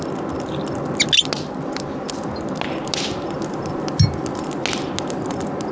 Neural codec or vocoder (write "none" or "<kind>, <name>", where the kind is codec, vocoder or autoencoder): none